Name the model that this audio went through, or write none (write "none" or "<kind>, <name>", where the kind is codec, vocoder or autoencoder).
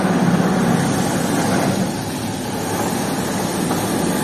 none